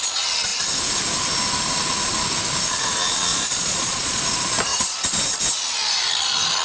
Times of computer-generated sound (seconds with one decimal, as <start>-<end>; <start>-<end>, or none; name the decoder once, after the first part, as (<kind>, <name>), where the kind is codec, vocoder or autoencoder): 3.3-4.2 (vocoder, Vocos); 4.7-5.2